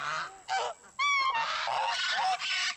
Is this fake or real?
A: real